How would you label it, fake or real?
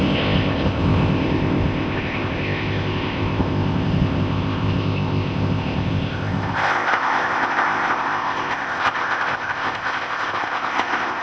fake